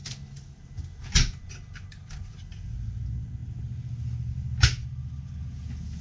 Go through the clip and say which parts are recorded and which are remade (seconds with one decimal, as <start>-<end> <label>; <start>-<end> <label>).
0.0-6.0 recorded